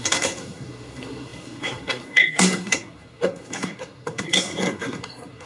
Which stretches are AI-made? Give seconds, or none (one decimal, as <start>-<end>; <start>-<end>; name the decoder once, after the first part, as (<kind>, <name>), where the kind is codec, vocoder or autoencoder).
0.0-5.5 (codec, SNAC)